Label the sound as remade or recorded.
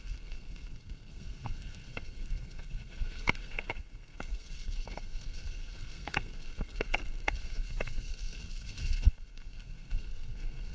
remade